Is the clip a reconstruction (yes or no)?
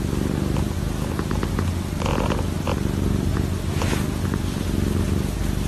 no